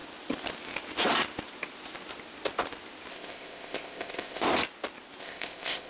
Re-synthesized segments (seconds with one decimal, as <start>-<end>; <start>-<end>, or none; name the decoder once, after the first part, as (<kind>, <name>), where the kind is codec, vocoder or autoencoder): 3.1-4.5 (codec, ZipCodec); 5.2-5.9